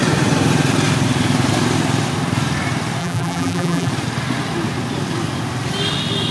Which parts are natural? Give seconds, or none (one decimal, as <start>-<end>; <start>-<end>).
0.0-3.0; 3.9-6.3